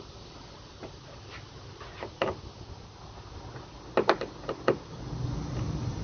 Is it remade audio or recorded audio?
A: recorded